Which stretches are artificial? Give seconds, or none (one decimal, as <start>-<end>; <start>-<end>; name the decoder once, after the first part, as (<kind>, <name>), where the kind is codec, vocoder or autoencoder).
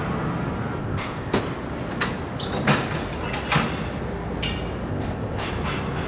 0.8-1.4 (codec, ZipCodec); 4.9-5.5